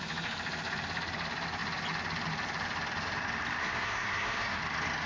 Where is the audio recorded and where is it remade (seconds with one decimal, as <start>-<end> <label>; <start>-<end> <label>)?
0.0-3.6 recorded; 3.6-4.6 remade; 4.6-5.1 recorded